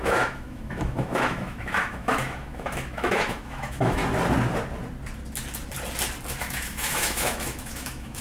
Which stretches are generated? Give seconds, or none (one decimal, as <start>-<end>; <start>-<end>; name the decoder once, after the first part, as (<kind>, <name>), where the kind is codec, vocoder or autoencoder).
0.0-4.0 (autoencoder, DAC-VAE); 6.4-8.2